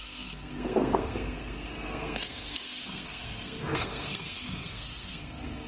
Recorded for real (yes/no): no